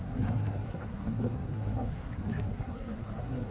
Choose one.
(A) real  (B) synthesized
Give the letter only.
B